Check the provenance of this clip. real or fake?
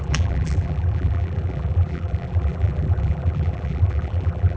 fake